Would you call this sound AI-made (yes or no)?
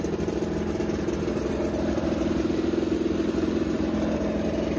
no